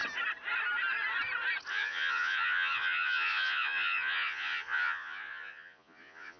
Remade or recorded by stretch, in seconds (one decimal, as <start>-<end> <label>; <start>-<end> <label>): 0.0-1.7 recorded; 1.7-6.4 remade